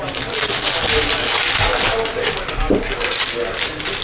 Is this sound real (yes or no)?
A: yes